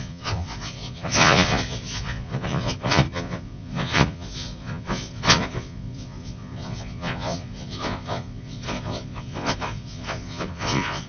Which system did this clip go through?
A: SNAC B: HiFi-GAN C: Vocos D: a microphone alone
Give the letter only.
C